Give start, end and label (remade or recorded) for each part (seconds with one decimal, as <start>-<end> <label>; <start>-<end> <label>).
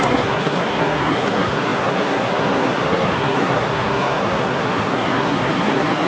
0.0-6.1 remade